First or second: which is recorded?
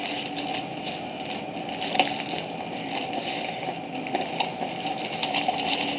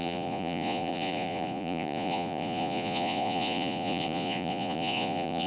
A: first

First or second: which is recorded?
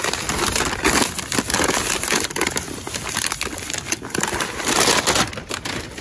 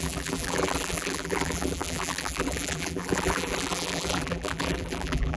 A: first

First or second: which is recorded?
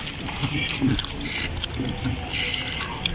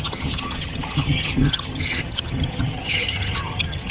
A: first